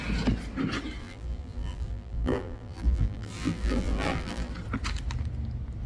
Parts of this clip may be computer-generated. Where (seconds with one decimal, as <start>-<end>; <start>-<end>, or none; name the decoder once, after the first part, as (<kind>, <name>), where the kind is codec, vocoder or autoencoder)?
1.0-4.5 (vocoder, BigVGAN v2)